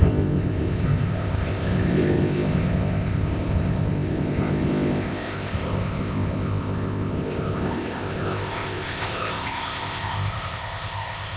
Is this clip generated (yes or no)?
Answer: yes